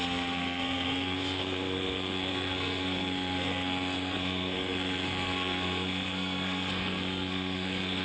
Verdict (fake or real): fake